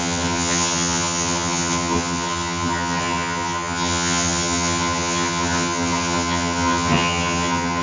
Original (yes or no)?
no